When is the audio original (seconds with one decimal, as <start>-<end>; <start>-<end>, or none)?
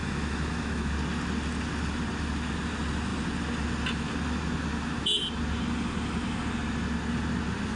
0.9-7.8